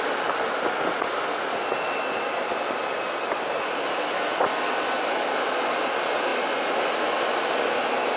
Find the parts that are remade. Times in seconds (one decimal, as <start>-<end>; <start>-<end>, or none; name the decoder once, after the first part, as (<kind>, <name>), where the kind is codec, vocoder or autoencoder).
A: none